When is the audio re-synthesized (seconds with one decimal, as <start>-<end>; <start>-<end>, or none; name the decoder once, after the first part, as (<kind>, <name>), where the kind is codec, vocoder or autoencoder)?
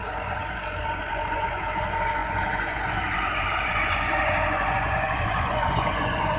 0.0-6.4 (vocoder, Vocos)